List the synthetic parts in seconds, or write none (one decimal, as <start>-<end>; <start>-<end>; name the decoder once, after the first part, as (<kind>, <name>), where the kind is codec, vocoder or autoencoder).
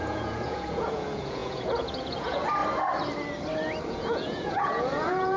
0.0-2.6 (vocoder, Vocos); 3.9-5.4